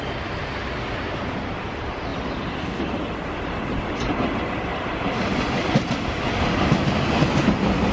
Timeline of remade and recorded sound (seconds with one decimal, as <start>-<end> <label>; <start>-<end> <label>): 0.0-7.9 recorded